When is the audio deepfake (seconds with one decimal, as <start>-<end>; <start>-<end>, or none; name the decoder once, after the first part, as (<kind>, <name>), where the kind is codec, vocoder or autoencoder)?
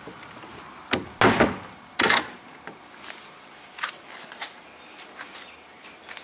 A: none